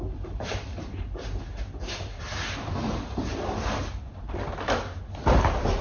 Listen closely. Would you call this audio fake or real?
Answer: real